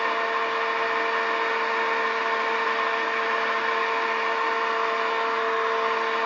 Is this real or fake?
real